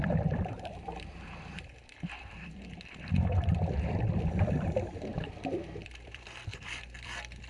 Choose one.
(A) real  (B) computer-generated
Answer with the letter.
B